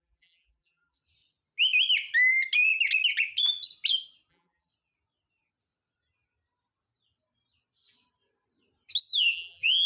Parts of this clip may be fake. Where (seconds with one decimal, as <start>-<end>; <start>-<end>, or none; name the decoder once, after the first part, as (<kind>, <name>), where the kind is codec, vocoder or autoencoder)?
0.0-1.0 (vocoder, BigVGAN v2); 4.3-4.7; 9.2-9.9